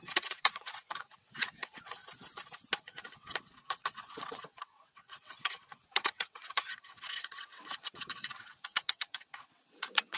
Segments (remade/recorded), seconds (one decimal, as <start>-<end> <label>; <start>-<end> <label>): 0.0-2.0 remade; 2.0-2.8 recorded; 2.8-10.2 remade

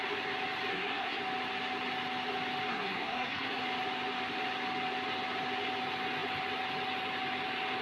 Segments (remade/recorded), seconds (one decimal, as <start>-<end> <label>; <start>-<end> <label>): 0.0-0.7 recorded; 0.7-1.2 remade; 1.2-2.7 recorded; 2.7-3.6 remade; 3.6-7.8 recorded

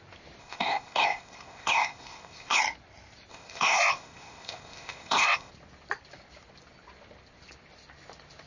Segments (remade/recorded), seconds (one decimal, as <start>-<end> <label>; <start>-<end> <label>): 0.0-0.4 recorded; 0.4-2.6 remade; 2.6-3.3 recorded; 3.3-5.5 remade; 5.5-8.5 recorded

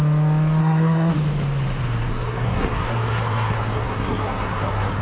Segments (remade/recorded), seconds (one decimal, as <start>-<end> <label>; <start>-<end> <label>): 0.0-0.6 recorded; 0.6-1.1 remade; 1.1-2.1 recorded; 2.1-5.0 remade

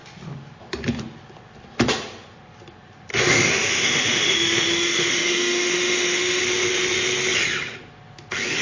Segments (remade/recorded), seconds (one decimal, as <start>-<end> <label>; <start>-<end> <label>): 0.0-3.1 recorded; 3.1-6.4 remade; 6.4-8.6 recorded

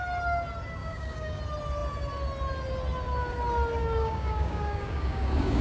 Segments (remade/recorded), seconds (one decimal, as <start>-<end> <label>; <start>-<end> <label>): 0.0-0.8 recorded; 0.8-1.4 remade; 1.4-3.8 recorded; 3.8-5.6 remade